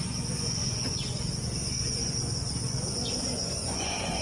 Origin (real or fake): fake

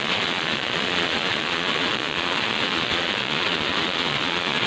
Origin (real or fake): fake